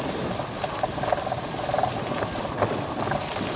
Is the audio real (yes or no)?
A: yes